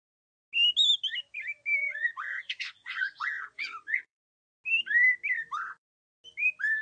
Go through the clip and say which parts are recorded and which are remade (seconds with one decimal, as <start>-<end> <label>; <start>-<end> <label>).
0.0-1.8 recorded; 1.8-4.2 remade; 4.2-6.8 recorded